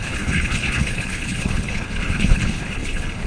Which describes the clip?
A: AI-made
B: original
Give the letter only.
A